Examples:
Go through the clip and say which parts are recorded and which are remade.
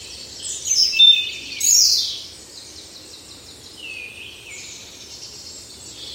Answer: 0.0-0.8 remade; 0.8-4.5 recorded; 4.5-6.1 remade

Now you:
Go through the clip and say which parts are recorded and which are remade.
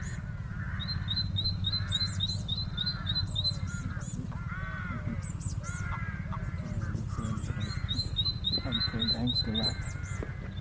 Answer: 0.0-10.6 recorded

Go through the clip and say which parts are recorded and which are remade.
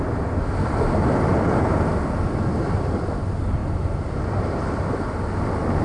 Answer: 0.0-3.6 recorded; 3.6-4.8 remade; 4.8-5.8 recorded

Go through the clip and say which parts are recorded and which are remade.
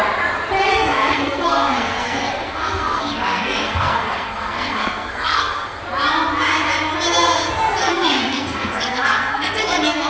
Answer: 0.0-0.7 recorded; 0.7-5.8 remade; 5.8-7.8 recorded; 7.8-10.1 remade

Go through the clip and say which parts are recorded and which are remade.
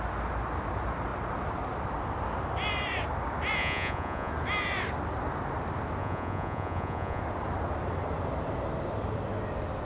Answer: 0.0-3.6 recorded; 3.6-4.3 remade; 4.3-6.0 recorded; 6.0-7.2 remade; 7.2-9.8 recorded